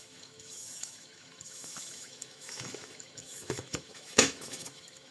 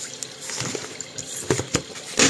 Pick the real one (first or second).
second